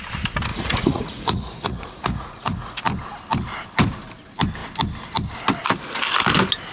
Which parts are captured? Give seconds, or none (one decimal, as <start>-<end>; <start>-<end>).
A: 0.0-0.5; 2.8-6.7